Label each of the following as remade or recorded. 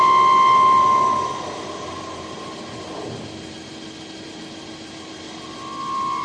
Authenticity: recorded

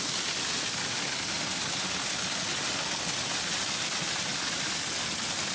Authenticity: recorded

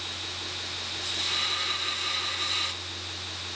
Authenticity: recorded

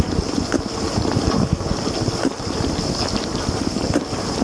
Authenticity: recorded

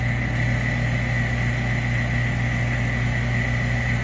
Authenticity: recorded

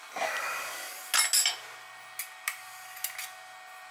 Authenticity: recorded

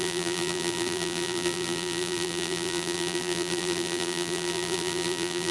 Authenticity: remade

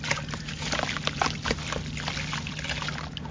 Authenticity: recorded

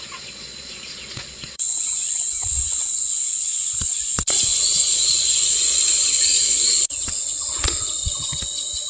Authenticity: remade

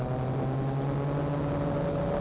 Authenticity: recorded